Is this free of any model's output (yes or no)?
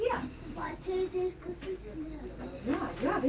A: yes